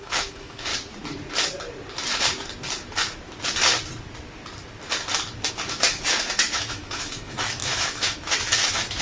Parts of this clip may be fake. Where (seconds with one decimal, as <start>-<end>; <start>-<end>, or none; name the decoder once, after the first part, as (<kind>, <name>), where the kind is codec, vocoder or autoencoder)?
0.0-0.7 (autoencoder, DAC-VAE); 5.5-9.0